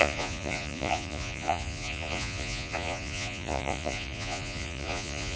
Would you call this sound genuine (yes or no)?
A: no